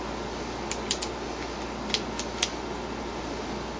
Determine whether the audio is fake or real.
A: real